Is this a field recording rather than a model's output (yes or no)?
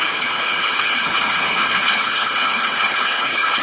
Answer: no